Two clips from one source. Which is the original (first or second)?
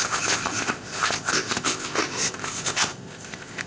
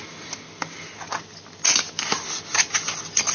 second